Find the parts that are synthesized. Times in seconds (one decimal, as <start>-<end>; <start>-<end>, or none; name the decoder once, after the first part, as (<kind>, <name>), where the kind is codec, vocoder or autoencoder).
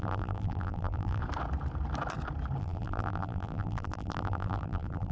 0.0-1.2 (vocoder, BigVGAN v2); 2.6-5.1